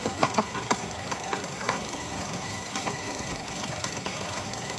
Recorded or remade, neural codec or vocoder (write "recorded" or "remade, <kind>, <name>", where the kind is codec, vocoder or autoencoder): remade, codec, SNAC